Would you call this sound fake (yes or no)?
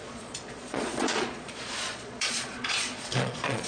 yes